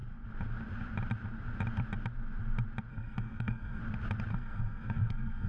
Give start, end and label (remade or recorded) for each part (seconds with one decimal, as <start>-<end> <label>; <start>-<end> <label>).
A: 0.0-2.9 recorded; 2.9-3.8 remade; 3.8-4.3 recorded; 4.3-5.5 remade